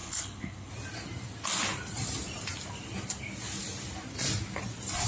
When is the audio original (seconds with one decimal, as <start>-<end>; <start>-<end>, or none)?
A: 0.7-5.1